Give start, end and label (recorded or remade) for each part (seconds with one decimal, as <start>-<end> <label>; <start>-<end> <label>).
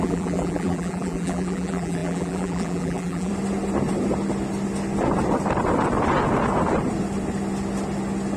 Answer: 0.0-3.3 remade; 3.3-8.4 recorded